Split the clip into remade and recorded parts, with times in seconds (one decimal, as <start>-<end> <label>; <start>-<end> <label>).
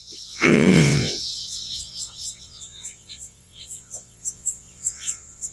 0.0-5.5 remade